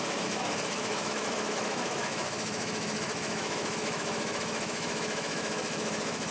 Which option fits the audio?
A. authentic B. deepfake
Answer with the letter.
B